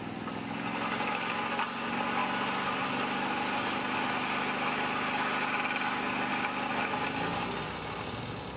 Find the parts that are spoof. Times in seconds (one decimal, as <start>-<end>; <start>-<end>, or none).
none